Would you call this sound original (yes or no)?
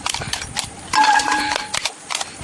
yes